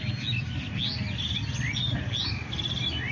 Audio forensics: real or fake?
real